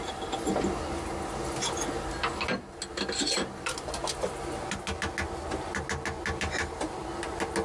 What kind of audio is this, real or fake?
real